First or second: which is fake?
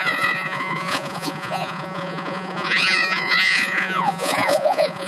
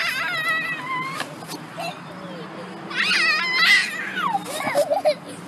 first